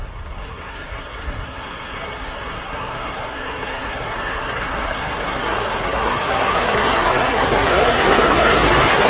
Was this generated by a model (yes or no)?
yes